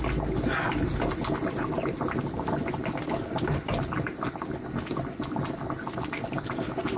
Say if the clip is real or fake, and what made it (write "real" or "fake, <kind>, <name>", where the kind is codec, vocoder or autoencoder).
real